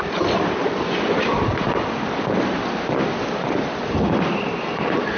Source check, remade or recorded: recorded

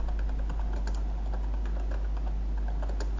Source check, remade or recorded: recorded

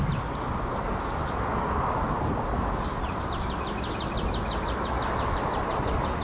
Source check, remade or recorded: recorded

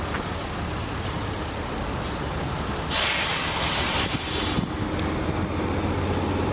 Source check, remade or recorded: recorded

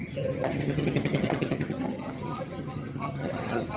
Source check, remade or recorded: remade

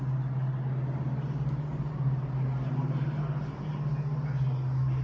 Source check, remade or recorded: recorded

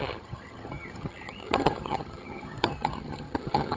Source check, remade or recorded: remade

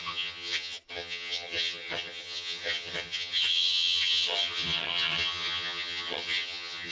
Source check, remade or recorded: remade